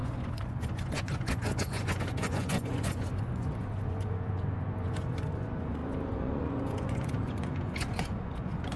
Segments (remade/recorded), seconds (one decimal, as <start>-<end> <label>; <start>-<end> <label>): 0.0-8.8 remade